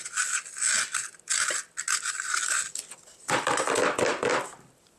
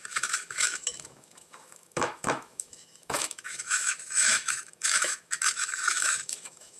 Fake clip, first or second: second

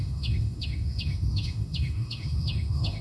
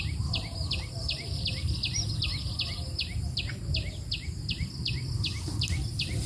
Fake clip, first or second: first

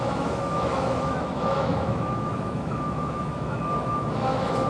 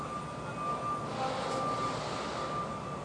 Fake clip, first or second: first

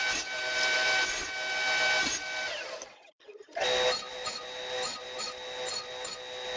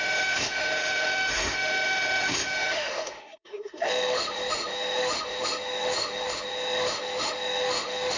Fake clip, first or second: second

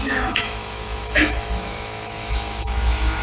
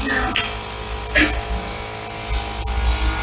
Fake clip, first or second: first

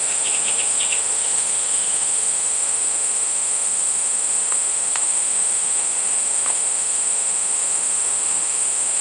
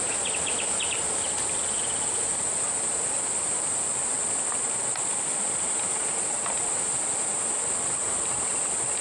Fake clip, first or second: first